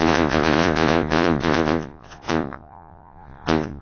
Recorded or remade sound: remade